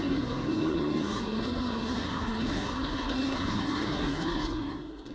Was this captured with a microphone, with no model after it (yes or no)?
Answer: no